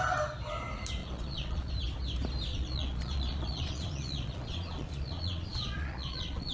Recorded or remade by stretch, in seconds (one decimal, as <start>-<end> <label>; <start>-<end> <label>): 0.0-1.0 recorded; 1.0-1.7 remade; 1.7-2.5 recorded; 2.5-6.5 remade